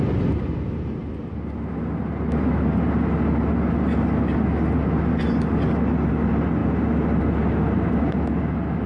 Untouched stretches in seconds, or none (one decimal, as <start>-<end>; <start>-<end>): 0.0-8.9